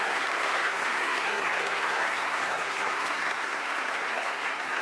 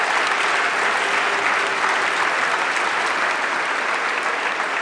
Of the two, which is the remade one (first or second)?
first